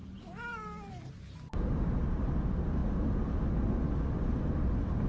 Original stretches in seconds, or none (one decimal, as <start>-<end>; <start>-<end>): 0.0-5.1